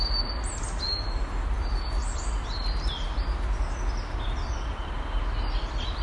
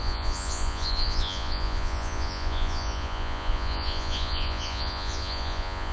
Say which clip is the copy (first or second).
second